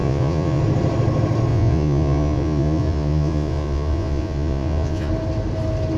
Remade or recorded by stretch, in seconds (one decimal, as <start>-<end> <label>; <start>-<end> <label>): 0.0-0.6 remade; 0.6-1.5 recorded; 1.5-5.1 remade; 5.1-6.0 recorded